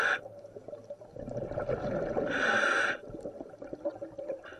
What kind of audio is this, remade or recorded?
recorded